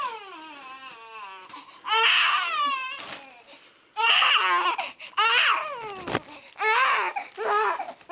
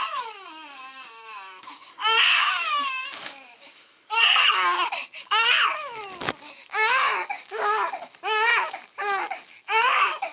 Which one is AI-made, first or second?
second